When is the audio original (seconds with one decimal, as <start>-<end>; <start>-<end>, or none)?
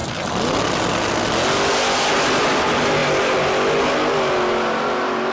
0.0-5.3